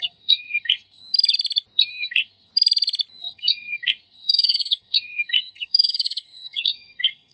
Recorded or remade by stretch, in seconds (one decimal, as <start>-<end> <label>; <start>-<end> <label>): 0.0-1.0 remade; 1.0-1.9 recorded; 1.9-2.5 remade; 2.5-3.2 recorded; 3.2-7.3 remade